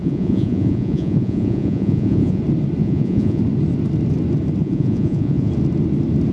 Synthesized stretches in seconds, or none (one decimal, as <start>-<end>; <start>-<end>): 0.0-2.4; 2.8-3.4; 4.6-5.5